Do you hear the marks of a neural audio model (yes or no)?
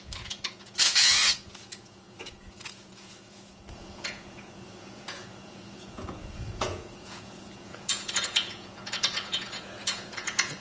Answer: yes